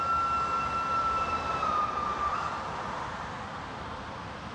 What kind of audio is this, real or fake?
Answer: real